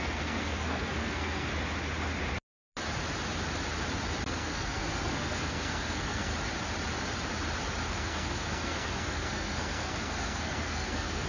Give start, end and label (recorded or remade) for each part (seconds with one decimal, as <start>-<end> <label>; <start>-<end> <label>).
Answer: 0.0-1.5 remade; 1.5-4.3 recorded; 4.3-6.3 remade; 6.3-7.9 recorded; 7.9-11.3 remade